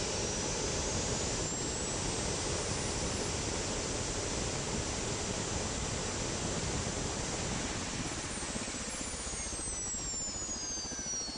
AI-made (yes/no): no